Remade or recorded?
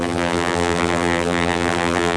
remade